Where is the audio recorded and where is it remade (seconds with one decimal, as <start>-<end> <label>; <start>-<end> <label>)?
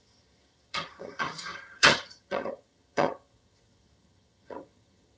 0.0-5.2 remade